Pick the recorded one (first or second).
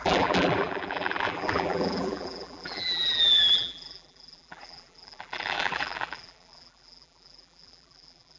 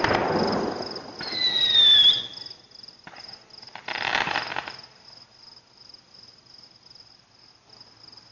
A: second